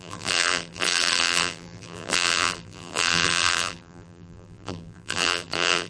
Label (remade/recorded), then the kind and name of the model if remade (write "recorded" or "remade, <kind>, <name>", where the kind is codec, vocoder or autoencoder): remade, vocoder, BigVGAN v2